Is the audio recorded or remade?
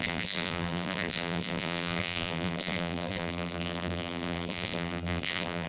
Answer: remade